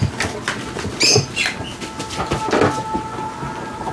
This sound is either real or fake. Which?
real